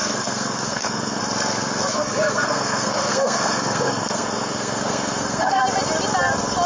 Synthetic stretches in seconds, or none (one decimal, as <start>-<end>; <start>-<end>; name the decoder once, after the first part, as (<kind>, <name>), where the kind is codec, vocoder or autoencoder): 0.0-1.2 (codec, SNAC); 1.9-5.6